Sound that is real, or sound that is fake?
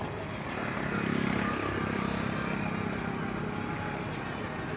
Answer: real